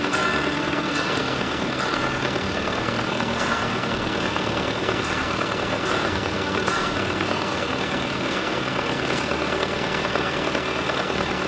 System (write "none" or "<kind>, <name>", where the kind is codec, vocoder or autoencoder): codec, SNAC